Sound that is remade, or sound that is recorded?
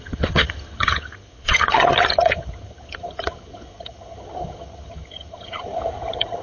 remade